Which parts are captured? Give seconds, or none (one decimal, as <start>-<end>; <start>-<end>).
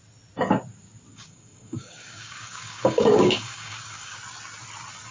0.0-1.1; 4.2-5.1